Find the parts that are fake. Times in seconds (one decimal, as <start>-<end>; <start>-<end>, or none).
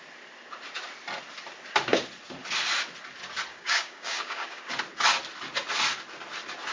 3.5-4.7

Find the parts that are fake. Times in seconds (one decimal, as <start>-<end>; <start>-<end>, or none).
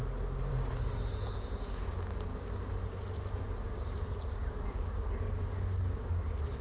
2.3-6.6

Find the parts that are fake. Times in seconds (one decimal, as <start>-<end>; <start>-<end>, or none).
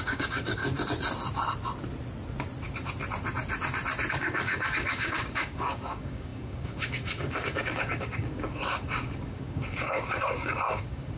0.0-0.6; 4.1-11.2